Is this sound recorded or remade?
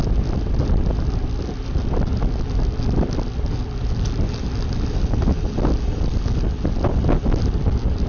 recorded